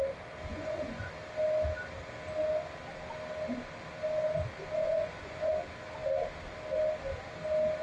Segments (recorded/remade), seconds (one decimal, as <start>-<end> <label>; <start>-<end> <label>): 0.0-0.5 recorded; 0.5-1.1 remade; 1.1-4.8 recorded; 4.8-5.5 remade; 5.5-7.8 recorded